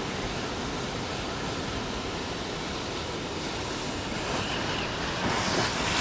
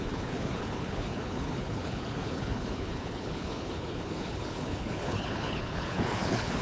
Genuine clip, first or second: first